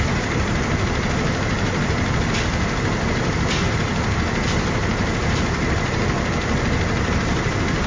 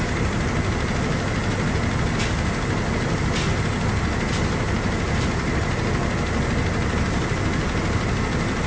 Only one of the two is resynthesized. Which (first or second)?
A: first